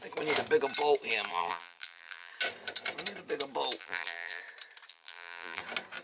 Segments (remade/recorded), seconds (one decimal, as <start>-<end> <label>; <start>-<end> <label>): 0.0-1.3 recorded; 1.3-2.3 remade; 2.3-3.8 recorded; 3.8-4.4 remade; 4.4-4.9 recorded; 4.9-5.6 remade; 5.6-6.0 recorded